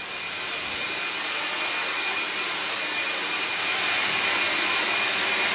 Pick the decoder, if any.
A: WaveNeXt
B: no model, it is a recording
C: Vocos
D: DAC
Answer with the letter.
B